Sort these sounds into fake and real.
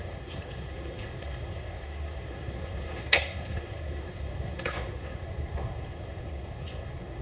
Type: fake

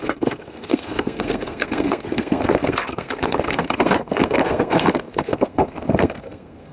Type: fake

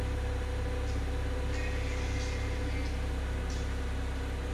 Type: real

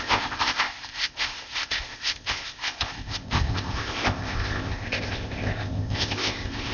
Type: fake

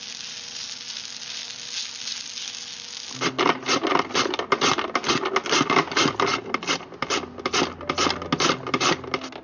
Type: real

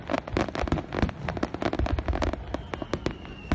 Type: real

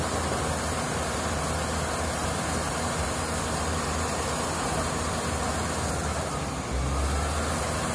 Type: real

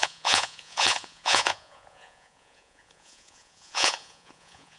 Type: fake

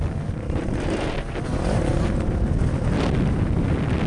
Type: real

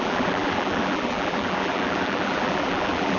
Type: fake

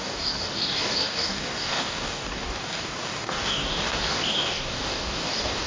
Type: fake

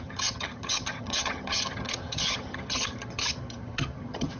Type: fake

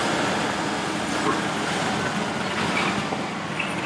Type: real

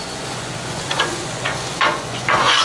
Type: fake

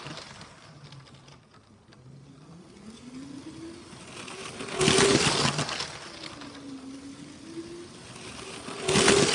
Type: real